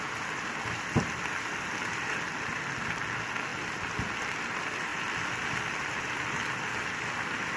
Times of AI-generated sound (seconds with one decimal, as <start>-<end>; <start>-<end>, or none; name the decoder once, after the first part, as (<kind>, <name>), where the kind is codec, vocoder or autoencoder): none